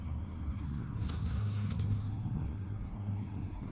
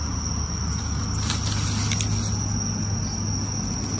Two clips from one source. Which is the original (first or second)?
second